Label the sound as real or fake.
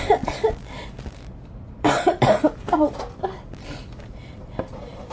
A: fake